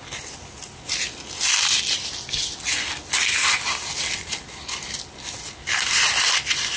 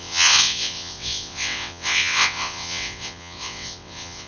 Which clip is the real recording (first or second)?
first